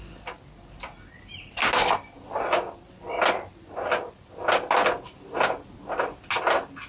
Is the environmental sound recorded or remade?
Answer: recorded